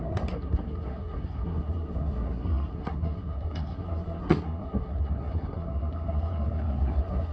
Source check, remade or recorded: remade